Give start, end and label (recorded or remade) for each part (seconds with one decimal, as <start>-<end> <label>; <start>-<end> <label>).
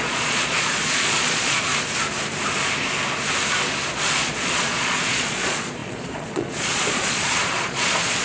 0.0-1.7 remade; 1.7-3.9 recorded; 3.9-8.2 remade